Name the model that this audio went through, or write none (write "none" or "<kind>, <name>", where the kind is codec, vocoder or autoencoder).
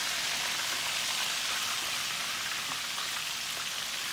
none